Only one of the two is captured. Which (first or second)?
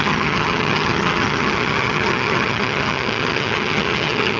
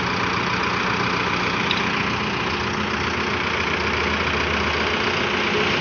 second